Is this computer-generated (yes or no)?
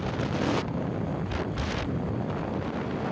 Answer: no